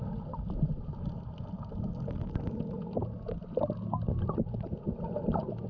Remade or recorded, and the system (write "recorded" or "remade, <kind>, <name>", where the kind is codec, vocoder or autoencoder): recorded